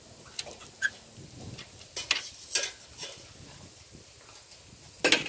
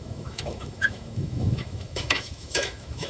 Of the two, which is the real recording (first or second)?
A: first